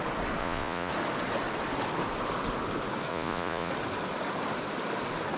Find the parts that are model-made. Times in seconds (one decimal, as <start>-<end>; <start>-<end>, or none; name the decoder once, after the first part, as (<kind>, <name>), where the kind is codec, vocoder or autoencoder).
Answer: 0.4-0.9 (vocoder, Vocos); 3.1-3.7